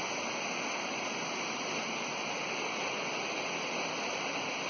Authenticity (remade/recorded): recorded